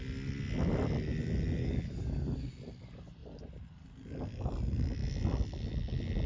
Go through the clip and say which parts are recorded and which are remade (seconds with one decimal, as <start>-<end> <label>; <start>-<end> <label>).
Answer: 0.0-1.6 recorded; 1.6-2.5 remade; 2.5-6.3 recorded